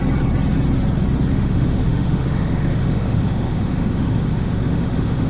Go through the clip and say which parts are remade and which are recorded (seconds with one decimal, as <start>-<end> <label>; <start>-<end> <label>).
0.0-1.3 recorded; 1.3-5.3 remade